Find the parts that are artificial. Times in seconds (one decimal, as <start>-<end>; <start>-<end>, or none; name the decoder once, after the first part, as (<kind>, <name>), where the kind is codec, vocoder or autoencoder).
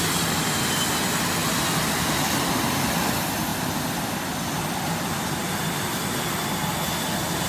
3.5-4.4 (vocoder, BigVGAN v2)